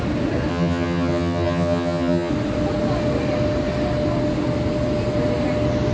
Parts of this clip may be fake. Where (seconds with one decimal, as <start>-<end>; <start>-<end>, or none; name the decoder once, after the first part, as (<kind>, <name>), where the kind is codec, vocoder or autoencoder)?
0.5-2.3 (vocoder, HiFi-GAN)

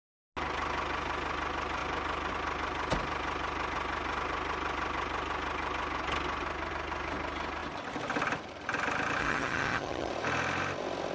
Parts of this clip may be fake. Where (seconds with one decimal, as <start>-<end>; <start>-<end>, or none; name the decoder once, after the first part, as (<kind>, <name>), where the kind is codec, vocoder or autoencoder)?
9.2-10.1 (vocoder, HiFi-GAN)

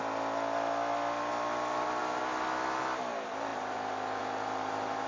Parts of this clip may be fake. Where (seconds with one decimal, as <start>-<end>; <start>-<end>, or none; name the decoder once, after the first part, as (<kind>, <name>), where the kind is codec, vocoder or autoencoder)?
none

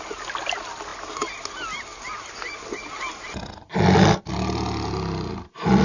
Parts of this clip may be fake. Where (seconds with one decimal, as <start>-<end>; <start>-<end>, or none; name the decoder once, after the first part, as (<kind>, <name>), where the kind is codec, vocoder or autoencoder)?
none